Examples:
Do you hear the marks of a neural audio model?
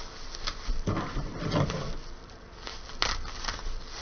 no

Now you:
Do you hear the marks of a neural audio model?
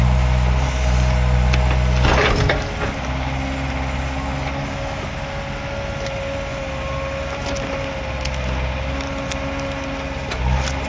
no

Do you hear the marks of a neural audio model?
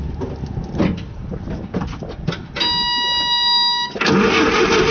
no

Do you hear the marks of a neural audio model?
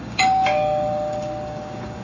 yes